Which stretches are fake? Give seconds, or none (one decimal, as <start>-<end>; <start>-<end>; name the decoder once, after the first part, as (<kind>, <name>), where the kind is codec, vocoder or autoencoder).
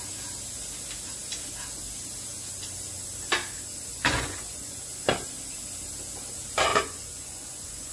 3.9-4.9 (vocoder, Vocos); 6.7-7.9